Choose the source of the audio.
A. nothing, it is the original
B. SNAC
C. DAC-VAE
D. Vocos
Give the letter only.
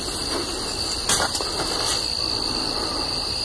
A